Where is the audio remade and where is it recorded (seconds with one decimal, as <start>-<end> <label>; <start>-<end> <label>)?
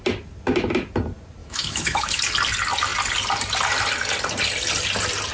0.0-1.4 recorded; 1.4-2.2 remade; 2.2-5.3 recorded